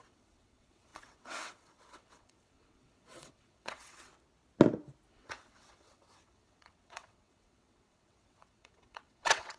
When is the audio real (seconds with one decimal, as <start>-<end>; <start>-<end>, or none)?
4.1-5.1

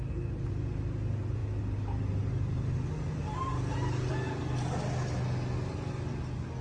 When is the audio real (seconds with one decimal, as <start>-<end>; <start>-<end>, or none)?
0.0-6.6